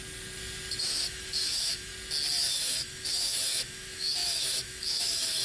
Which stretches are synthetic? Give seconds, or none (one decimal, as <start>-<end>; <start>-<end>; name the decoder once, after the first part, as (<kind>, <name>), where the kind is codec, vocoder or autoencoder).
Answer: 0.8-1.9 (autoencoder, DAC-VAE); 2.5-5.4